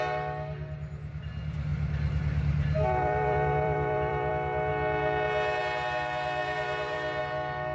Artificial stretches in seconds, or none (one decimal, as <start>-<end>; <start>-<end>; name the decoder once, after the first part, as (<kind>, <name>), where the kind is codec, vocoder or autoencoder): 1.7-4.3 (vocoder, BigVGAN v2); 6.4-7.2